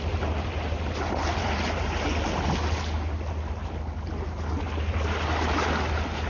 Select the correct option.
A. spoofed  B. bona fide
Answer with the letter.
B